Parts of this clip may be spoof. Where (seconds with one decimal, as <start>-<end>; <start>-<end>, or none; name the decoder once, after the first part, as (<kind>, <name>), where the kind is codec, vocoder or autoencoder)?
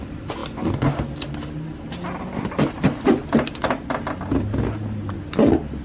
none